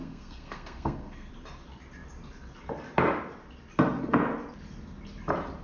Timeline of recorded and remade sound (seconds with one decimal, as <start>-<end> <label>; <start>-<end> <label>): 0.0-1.3 remade; 1.3-5.6 recorded